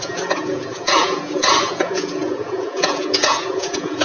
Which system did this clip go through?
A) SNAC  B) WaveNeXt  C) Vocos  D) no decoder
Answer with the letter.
C